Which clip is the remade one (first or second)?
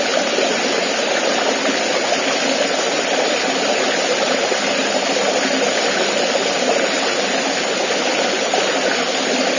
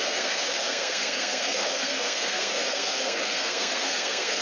second